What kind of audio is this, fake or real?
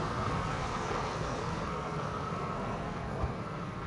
fake